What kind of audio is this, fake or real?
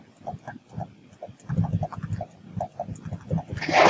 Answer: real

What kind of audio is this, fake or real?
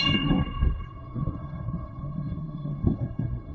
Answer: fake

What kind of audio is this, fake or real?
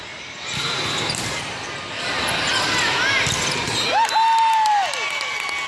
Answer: real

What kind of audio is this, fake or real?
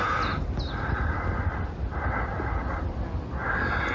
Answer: real